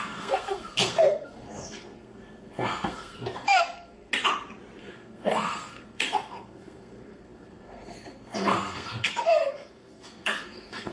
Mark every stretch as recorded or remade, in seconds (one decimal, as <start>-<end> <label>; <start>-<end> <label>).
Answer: 0.0-4.1 remade; 4.1-4.8 recorded; 4.8-10.9 remade